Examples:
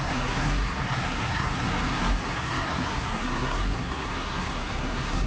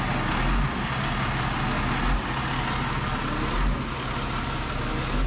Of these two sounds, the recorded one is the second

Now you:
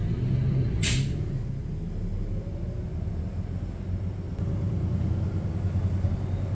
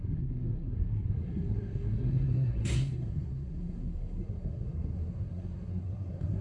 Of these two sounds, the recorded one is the first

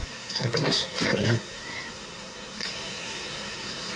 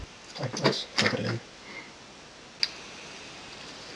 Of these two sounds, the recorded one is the second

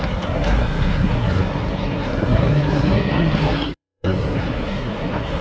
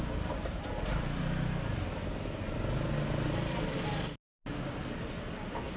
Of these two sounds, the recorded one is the second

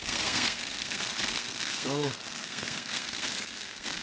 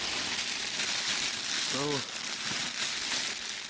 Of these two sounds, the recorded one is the second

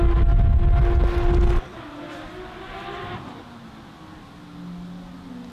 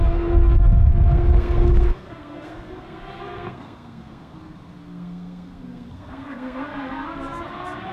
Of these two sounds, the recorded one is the first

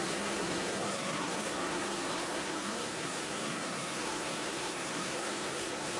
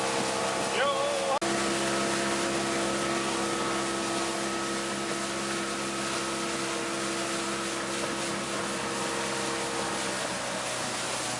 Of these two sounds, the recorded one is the second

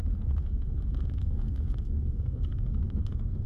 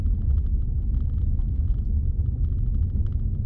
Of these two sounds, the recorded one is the second